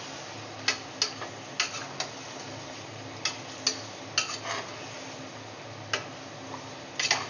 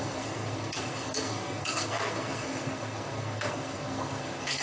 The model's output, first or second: second